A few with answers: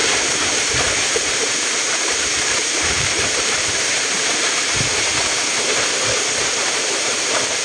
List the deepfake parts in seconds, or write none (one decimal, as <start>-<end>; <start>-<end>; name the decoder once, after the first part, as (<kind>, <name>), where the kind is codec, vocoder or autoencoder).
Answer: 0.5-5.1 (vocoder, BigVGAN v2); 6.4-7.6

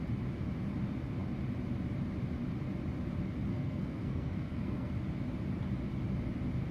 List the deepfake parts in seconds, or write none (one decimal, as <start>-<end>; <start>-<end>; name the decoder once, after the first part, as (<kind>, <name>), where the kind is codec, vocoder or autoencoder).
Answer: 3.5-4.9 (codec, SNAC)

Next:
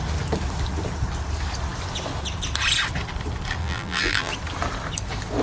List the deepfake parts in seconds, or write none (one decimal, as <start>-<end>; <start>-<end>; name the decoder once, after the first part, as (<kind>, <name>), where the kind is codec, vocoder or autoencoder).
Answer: 3.6-4.3 (vocoder, BigVGAN v2)